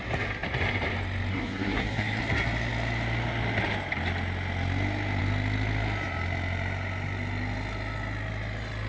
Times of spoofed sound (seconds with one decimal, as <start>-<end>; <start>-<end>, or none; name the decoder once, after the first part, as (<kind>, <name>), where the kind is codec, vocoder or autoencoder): 1.3-2.2 (codec, SNAC)